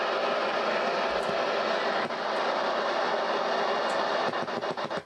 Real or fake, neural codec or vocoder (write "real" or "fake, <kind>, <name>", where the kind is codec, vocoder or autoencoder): real